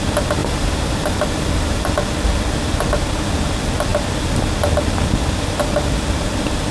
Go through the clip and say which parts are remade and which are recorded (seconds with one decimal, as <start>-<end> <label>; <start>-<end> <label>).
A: 0.0-0.4 recorded; 0.4-1.9 remade; 1.9-6.7 recorded